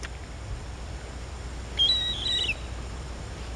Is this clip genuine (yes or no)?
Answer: no